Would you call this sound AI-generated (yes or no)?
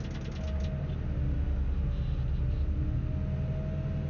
no